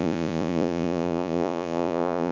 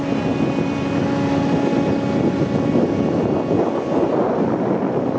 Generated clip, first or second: first